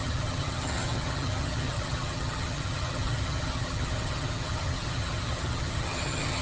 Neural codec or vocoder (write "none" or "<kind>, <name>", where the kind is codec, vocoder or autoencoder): vocoder, HiFi-GAN